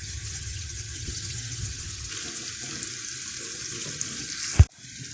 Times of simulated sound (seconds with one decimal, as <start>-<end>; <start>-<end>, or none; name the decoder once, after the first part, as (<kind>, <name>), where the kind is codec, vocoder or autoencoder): 0.0-2.1 (vocoder, HiFi-GAN)